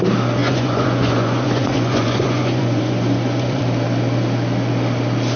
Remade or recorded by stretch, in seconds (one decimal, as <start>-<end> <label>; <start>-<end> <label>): 0.0-0.4 recorded; 0.4-3.6 remade; 3.6-5.4 recorded